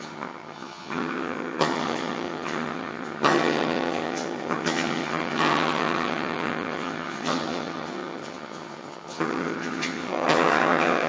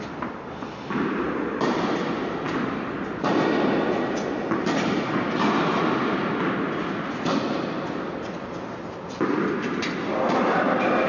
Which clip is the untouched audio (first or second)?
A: second